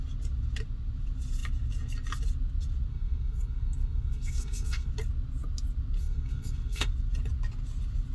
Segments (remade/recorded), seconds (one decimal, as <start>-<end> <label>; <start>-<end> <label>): 0.0-2.9 recorded; 2.9-4.9 remade; 4.9-6.0 recorded; 6.0-6.9 remade; 6.9-8.1 recorded